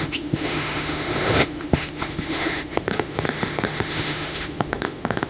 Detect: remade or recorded remade